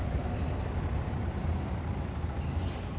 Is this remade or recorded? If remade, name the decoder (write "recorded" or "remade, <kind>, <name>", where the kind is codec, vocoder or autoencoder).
recorded